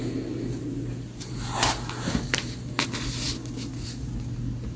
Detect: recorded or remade recorded